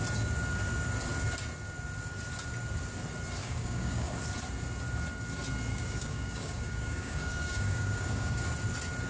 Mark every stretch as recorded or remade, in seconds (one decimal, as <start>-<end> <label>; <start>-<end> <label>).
0.0-3.4 recorded; 3.4-4.2 remade; 4.2-5.7 recorded; 5.7-8.4 remade; 8.4-9.1 recorded